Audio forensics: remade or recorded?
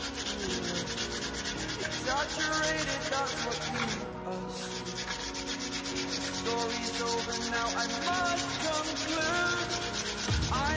recorded